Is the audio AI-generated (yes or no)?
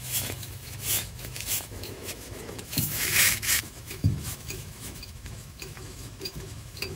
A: yes